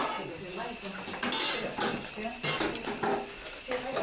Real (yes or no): yes